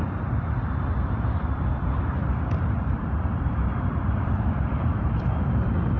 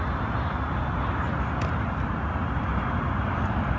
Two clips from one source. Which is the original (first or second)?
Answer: second